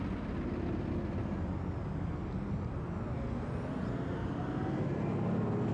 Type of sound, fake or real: real